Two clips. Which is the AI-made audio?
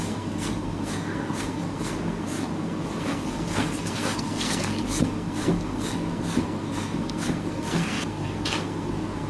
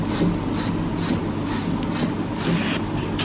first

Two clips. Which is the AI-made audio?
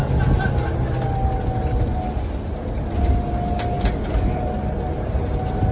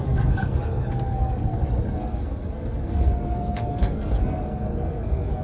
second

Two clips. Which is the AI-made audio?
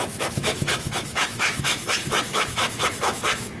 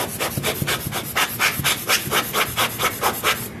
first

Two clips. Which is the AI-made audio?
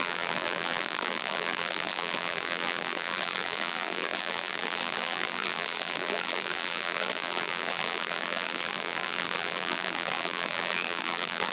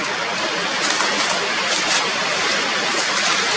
first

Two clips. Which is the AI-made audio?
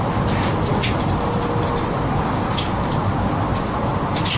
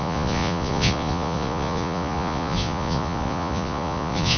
second